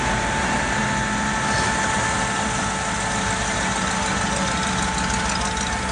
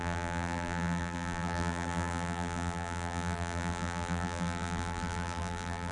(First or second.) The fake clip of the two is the second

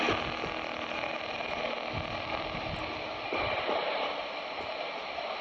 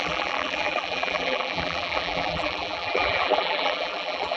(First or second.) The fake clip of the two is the second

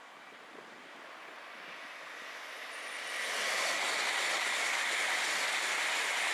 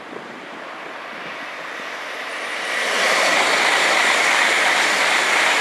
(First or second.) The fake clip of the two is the second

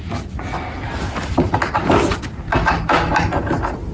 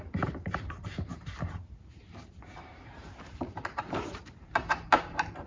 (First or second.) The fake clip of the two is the second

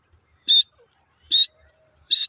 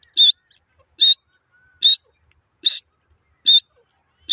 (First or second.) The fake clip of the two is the first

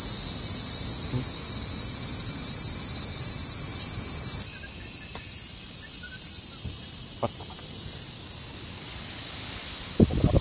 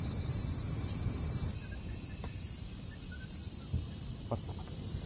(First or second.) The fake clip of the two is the second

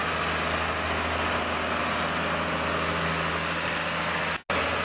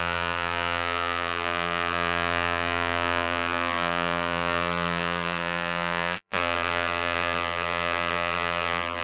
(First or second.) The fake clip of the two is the second